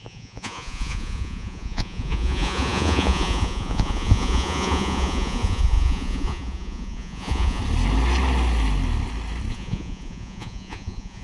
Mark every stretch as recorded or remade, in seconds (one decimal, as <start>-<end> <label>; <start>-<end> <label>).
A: 0.0-7.6 remade; 7.6-9.5 recorded; 9.5-11.2 remade